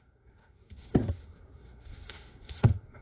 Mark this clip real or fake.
fake